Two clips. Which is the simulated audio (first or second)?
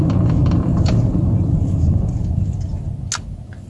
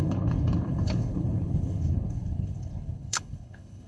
second